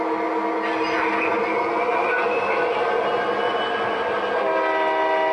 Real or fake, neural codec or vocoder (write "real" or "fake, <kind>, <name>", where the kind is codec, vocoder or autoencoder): real